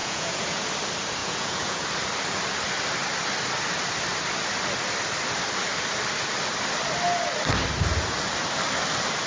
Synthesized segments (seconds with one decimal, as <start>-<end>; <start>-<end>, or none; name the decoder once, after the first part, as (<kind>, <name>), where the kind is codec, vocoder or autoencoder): 0.0-0.6 (vocoder, Vocos); 1.2-1.8